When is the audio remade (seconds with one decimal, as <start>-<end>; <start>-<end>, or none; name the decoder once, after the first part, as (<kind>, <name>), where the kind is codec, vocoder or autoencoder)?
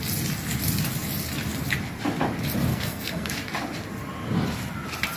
2.7-3.3 (codec, SNAC)